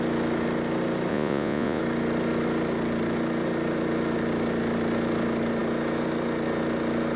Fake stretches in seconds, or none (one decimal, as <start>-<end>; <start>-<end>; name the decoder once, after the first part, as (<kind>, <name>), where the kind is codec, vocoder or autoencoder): 1.1-1.8 (vocoder, Vocos)